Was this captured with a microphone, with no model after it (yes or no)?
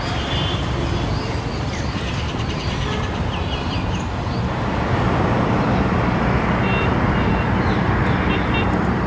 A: yes